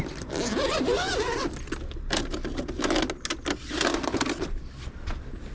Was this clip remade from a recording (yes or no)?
no